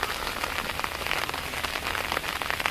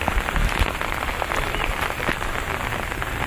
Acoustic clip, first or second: first